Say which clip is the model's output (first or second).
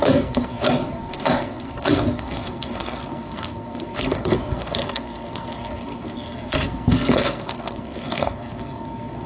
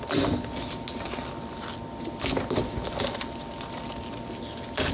first